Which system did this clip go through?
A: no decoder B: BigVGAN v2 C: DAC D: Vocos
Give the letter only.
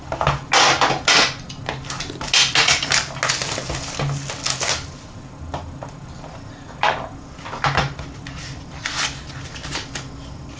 A